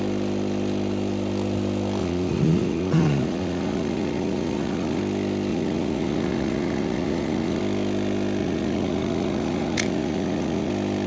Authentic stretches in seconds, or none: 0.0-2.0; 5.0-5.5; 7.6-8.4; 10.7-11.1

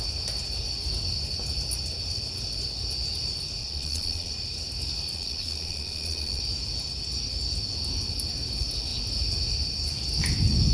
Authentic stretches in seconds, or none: 0.0-3.6; 4.3-5.1; 6.4-10.7

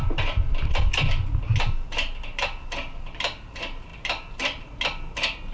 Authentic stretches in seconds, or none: 0.0-5.5

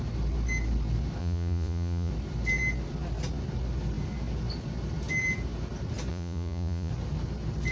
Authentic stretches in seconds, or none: 0.0-1.2; 2.1-6.1; 6.9-7.7

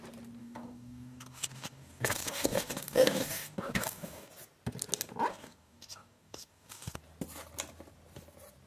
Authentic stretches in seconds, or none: 0.0-0.4; 4.3-5.3; 7.0-8.7

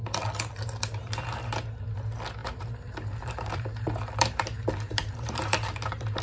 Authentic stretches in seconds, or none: 0.0-1.0; 1.8-2.4

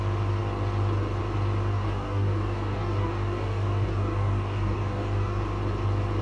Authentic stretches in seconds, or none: 0.0-1.7; 5.4-6.2

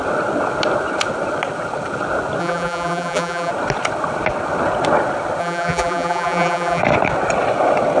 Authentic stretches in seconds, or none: 0.0-2.4; 3.5-5.4; 6.8-8.0